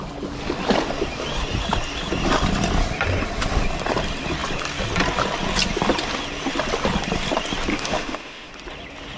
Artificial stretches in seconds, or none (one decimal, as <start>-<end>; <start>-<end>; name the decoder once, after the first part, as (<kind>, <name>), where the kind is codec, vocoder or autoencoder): 7.7-8.5 (autoencoder, DAC-VAE)

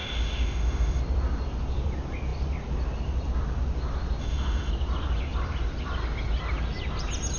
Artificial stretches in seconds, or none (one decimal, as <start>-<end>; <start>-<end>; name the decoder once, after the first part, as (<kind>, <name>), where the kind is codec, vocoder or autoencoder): 0.0-1.0 (autoencoder, DAC-VAE); 4.2-4.7

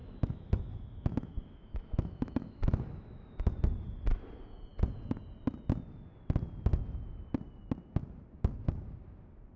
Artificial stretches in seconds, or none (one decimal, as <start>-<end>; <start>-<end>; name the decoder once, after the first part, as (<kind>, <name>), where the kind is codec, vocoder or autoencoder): 0.0-3.6 (autoencoder, DAC-VAE)

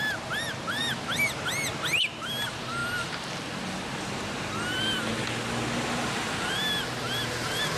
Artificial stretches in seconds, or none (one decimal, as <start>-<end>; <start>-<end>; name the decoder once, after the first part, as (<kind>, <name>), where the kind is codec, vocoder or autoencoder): none